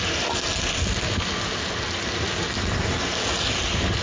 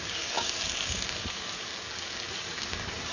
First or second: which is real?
first